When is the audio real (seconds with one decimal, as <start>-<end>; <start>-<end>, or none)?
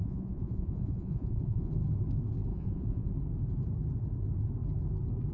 1.7-2.5; 3.1-5.3